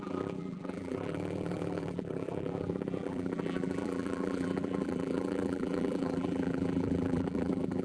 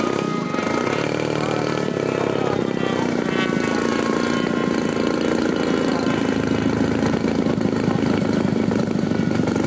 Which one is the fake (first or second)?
first